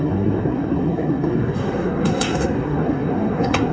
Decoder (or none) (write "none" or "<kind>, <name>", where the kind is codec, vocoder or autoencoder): codec, SNAC